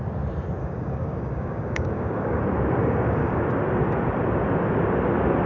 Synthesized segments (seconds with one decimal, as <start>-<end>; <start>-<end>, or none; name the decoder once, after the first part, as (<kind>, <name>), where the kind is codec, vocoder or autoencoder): 0.6-2.4 (codec, DAC); 2.8-3.4